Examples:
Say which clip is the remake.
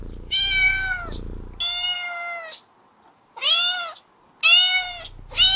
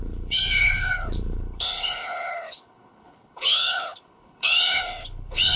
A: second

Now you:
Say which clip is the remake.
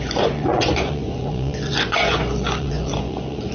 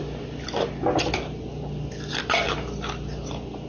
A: first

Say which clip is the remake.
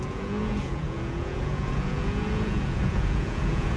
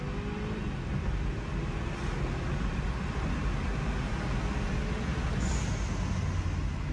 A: first